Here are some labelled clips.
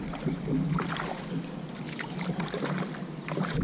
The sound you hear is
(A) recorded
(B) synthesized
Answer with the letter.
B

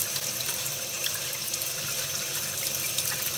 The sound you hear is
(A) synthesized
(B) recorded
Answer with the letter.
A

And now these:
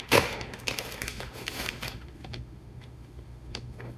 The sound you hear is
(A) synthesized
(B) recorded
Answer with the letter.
A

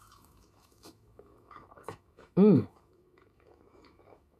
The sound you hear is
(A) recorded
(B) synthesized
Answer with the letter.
B